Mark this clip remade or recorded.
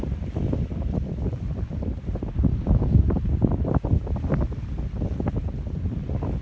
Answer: recorded